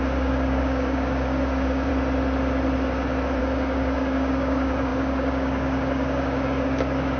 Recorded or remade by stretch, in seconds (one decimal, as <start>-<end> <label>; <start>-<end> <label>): 0.0-1.9 remade; 1.9-3.4 recorded; 3.4-7.2 remade